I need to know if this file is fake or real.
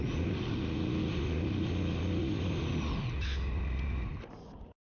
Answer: real